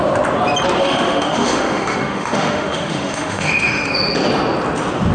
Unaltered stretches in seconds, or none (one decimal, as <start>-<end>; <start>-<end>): 0.0-0.8; 3.9-5.1